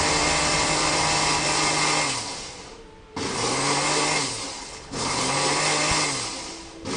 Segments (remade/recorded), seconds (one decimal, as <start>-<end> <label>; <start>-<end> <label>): 0.0-4.6 recorded; 4.6-5.2 remade; 5.2-7.0 recorded